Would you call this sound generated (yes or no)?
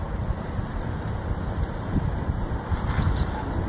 no